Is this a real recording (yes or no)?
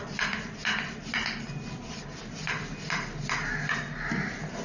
yes